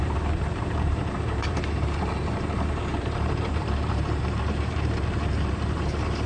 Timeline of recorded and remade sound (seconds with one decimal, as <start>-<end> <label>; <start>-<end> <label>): 0.0-6.3 remade